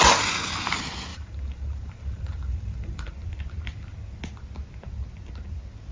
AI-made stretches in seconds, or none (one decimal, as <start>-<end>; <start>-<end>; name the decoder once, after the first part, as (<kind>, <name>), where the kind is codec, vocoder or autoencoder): 1.1-3.1 (vocoder, BigVGAN v2)